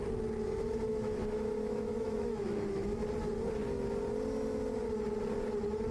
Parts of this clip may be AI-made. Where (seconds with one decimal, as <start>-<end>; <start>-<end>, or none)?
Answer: 0.9-3.0